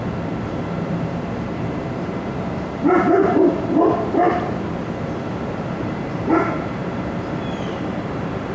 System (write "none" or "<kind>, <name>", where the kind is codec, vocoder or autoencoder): vocoder, BigVGAN v2